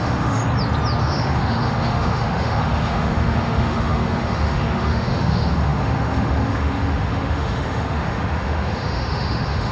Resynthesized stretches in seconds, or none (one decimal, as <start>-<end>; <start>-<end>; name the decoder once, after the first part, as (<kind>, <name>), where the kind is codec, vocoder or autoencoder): 0.0-0.4 (autoencoder, DAC-VAE); 1.0-9.7